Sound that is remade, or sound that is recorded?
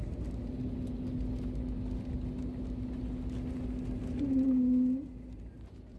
recorded